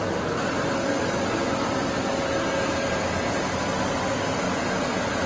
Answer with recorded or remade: recorded